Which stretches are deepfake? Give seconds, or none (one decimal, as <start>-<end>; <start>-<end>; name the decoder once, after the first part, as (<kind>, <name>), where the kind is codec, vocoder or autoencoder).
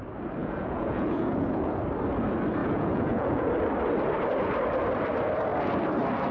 0.4-1.7 (vocoder, Vocos); 2.6-3.5